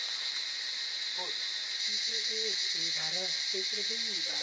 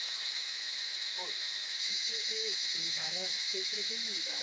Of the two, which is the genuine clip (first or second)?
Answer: first